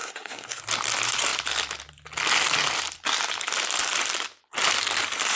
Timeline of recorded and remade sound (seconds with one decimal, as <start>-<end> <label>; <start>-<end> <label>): 0.0-0.6 remade; 0.6-5.4 recorded